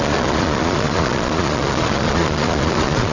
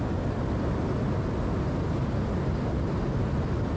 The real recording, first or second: second